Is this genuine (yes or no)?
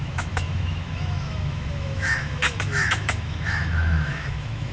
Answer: no